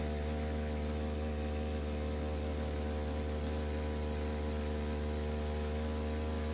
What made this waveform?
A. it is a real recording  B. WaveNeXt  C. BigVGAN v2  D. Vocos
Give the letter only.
A